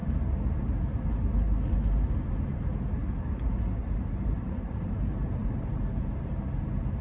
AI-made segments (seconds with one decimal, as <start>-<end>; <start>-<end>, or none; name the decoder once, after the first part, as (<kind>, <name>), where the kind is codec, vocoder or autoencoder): 3.8-5.8 (vocoder, BigVGAN v2)